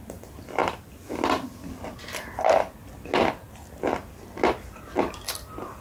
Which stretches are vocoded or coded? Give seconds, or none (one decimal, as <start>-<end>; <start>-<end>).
none